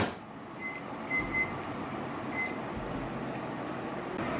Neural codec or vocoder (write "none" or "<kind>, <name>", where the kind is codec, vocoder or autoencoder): none